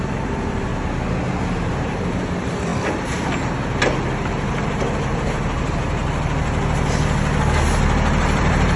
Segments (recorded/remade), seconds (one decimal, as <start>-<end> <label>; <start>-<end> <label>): 0.0-0.7 remade; 0.7-1.3 recorded; 1.3-2.7 remade; 2.7-4.3 recorded; 4.3-6.0 remade; 6.0-8.2 recorded; 8.2-8.8 remade